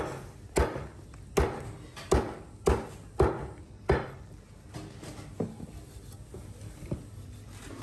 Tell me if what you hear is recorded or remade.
recorded